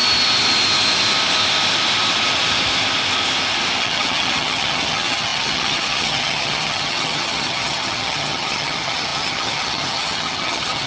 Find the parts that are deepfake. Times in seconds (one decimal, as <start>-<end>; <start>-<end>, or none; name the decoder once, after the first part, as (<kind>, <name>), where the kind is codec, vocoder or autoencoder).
3.8-10.9 (vocoder, HiFi-GAN)